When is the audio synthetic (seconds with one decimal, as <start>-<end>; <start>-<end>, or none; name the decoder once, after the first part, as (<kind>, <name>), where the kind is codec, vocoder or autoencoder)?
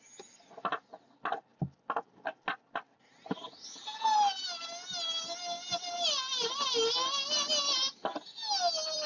none